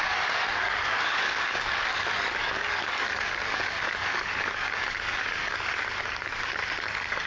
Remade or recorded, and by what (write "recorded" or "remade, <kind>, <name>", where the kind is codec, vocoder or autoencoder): remade, codec, DAC